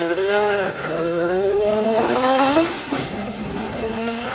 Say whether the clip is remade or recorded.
remade